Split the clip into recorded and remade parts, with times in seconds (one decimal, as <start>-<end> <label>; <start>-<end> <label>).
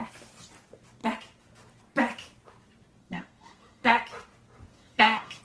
0.0-3.0 recorded; 3.0-4.0 remade; 4.0-4.7 recorded; 4.7-5.4 remade